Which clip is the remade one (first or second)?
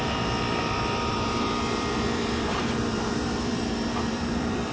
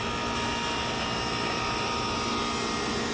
first